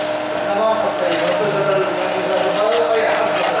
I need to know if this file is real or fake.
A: real